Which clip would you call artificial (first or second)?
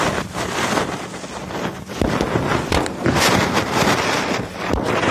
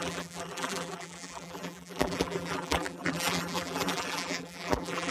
second